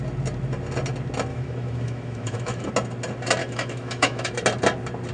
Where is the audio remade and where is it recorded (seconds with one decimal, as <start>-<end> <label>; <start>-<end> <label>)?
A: 0.0-1.3 recorded; 1.3-2.7 remade; 2.7-3.4 recorded; 3.4-4.3 remade; 4.3-5.1 recorded